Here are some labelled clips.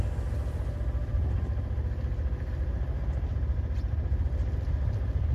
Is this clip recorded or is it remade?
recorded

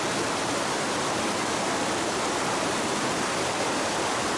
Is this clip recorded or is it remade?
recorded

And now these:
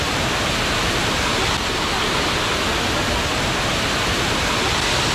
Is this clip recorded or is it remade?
recorded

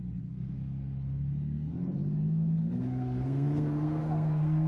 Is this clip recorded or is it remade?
remade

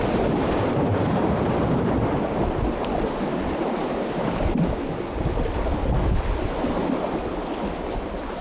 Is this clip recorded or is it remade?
recorded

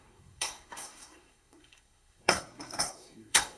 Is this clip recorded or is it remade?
remade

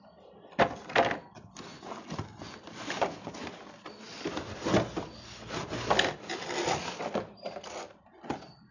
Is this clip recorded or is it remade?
recorded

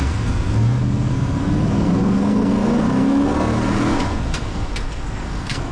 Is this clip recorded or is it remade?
remade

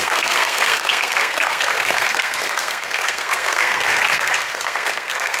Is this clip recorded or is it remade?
remade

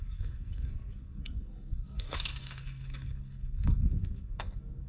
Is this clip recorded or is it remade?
remade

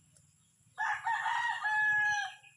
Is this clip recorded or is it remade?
recorded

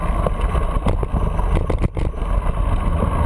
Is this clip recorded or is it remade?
recorded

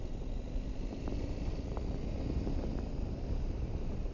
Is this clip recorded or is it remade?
recorded